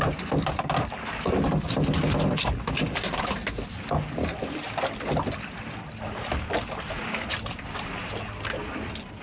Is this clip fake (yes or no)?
no